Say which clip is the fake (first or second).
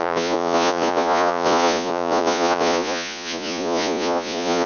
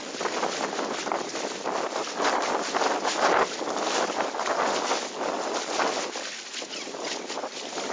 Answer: first